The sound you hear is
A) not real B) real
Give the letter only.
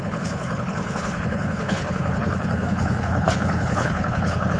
A